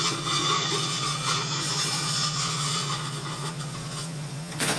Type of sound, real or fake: fake